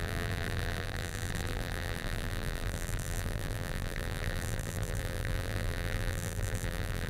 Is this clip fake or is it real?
fake